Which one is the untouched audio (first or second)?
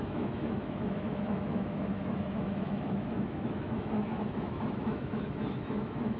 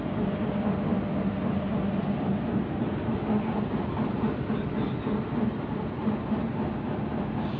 second